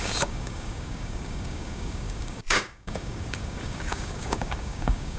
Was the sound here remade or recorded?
remade